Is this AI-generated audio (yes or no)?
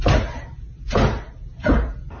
no